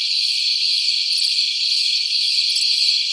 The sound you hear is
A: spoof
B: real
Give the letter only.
B